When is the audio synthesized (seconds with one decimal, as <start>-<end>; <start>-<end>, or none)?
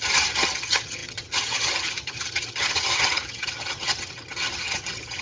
0.0-5.2